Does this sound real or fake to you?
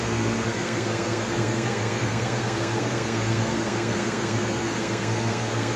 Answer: fake